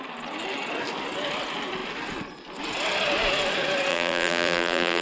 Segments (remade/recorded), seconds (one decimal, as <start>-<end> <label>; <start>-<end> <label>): 0.0-3.9 recorded; 3.9-5.0 remade